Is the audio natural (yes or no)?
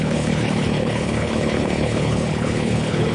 no